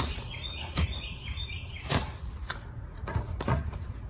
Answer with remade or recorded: remade